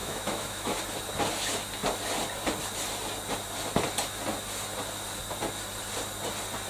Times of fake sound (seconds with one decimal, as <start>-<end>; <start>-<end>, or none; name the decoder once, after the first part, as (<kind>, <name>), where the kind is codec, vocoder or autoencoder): 0.0-0.8 (autoencoder, DAC-VAE)